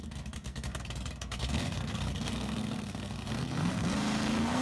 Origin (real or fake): fake